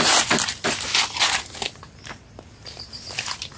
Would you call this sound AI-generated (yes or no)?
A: no